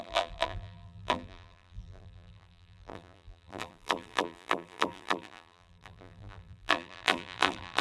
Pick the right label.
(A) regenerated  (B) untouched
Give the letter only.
A